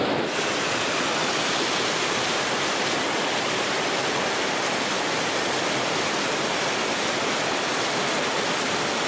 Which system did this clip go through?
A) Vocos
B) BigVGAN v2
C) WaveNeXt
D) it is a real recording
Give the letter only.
D